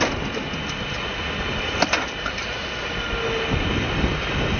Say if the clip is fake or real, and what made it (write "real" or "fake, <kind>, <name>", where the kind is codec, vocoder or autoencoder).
real